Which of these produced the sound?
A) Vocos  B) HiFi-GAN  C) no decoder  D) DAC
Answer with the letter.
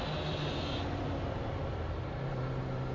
C